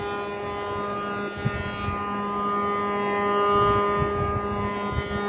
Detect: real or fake real